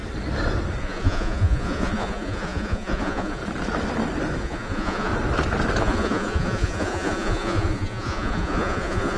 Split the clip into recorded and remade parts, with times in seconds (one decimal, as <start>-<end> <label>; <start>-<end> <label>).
0.0-0.8 recorded; 0.8-3.4 remade; 3.4-4.4 recorded; 4.4-5.1 remade; 5.1-5.8 recorded; 5.8-9.2 remade